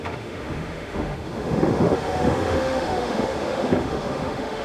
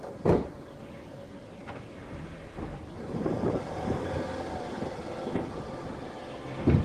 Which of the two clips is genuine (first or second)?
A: second